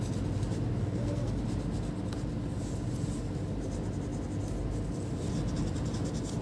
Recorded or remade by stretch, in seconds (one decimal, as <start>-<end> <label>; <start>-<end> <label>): 0.0-0.8 recorded; 0.8-1.4 remade; 1.4-6.4 recorded